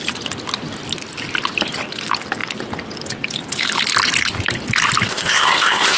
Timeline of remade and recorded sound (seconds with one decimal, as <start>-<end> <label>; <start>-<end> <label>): 0.0-5.1 recorded; 5.1-6.0 remade